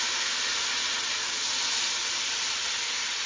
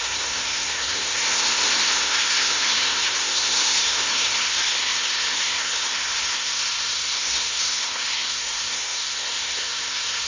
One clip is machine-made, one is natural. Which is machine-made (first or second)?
second